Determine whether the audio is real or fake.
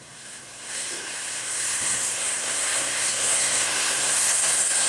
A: fake